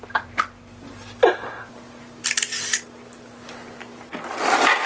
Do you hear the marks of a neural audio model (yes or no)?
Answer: no